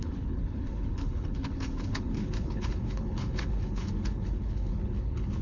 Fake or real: fake